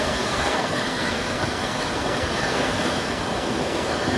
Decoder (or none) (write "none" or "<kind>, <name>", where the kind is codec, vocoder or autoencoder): codec, SNAC